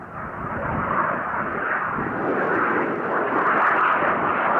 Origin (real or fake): real